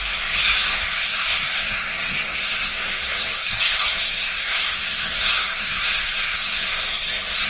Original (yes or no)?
no